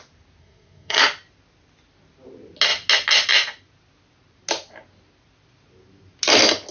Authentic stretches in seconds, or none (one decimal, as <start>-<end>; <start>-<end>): 0.0-0.4; 1.0-6.7